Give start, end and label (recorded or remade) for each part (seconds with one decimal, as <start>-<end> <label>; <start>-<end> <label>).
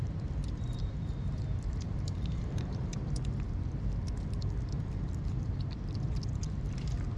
0.0-2.9 remade; 2.9-7.2 recorded